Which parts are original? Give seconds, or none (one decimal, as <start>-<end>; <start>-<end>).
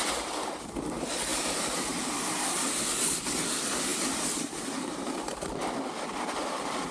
0.0-1.3; 2.8-3.9; 6.0-6.9